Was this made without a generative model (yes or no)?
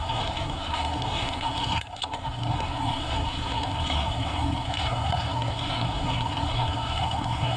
no